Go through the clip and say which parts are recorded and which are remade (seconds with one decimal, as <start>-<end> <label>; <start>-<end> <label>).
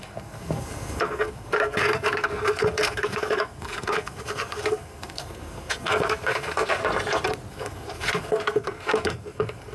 0.0-6.8 remade; 6.8-7.5 recorded; 7.5-9.7 remade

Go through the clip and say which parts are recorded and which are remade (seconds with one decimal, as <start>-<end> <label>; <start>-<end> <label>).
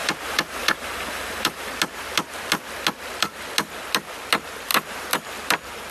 0.0-1.7 remade; 1.7-5.9 recorded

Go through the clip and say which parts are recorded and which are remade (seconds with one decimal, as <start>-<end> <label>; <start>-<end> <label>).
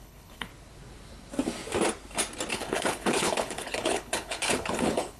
0.0-0.5 remade; 0.5-2.5 recorded; 2.5-5.2 remade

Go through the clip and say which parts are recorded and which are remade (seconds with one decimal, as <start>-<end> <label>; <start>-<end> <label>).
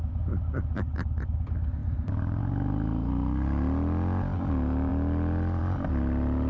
0.0-1.8 recorded; 1.8-2.4 remade; 2.4-6.5 recorded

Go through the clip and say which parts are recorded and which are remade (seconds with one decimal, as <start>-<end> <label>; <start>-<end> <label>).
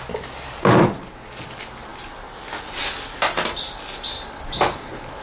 0.0-5.2 recorded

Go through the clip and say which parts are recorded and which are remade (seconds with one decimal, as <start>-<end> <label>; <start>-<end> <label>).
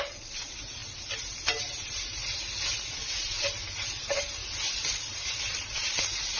0.0-6.4 recorded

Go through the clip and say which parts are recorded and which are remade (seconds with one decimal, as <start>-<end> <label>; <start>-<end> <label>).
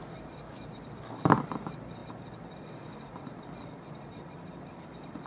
0.0-5.3 recorded